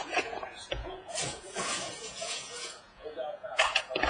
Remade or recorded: remade